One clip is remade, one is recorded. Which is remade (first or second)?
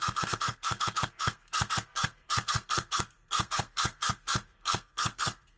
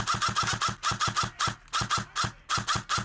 first